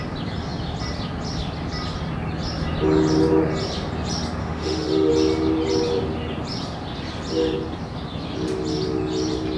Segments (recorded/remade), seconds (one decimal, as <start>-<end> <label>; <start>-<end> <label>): 0.0-4.4 recorded; 4.4-5.1 remade; 5.1-9.6 recorded